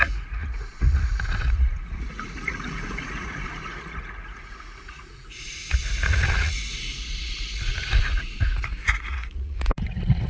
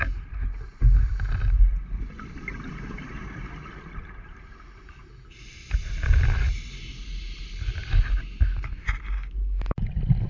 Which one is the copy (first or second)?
first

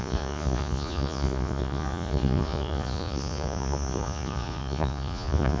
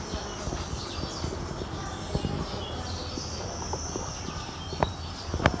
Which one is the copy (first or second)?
first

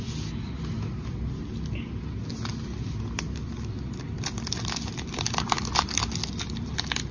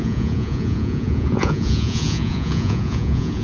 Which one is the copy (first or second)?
second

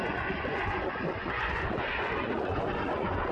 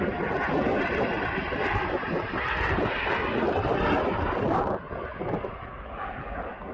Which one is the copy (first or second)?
first